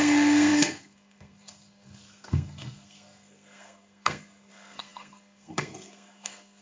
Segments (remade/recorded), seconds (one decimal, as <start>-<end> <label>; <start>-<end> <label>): 0.0-6.6 remade